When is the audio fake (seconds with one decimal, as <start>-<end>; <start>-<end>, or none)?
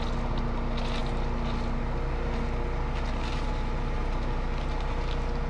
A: none